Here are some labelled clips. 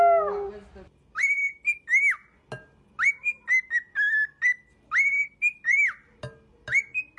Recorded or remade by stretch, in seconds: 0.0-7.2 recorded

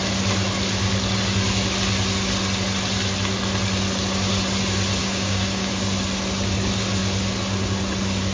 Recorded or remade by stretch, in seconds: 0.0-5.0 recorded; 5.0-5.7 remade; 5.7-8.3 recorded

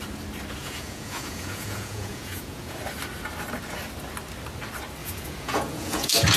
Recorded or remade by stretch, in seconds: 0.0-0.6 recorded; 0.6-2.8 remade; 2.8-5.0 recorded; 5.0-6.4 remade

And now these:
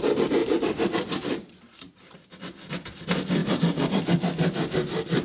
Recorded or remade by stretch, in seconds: 0.0-0.4 recorded; 0.4-2.4 remade; 2.4-3.4 recorded; 3.4-4.0 remade; 4.0-5.2 recorded